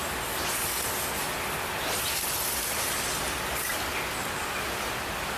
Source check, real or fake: real